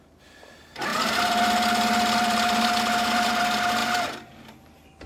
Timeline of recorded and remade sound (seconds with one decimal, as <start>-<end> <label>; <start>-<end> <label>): 0.0-0.9 recorded; 0.9-3.4 remade; 3.4-3.8 recorded; 3.8-5.1 remade